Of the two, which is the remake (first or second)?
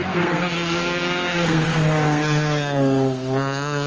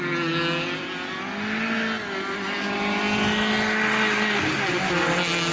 first